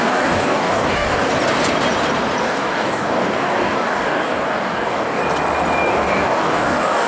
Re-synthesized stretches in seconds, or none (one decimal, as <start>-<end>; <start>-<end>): 0.0-1.3; 2.4-5.2; 5.9-7.1